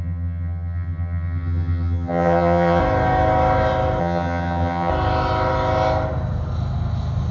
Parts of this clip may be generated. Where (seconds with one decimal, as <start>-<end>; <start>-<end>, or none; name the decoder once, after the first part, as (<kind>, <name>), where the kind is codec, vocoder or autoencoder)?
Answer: 0.0-2.8 (vocoder, HiFi-GAN); 4.0-4.9